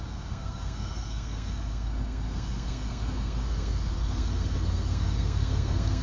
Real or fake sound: fake